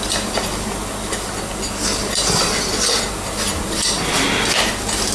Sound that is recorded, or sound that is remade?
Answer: recorded